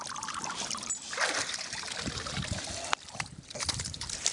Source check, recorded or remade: remade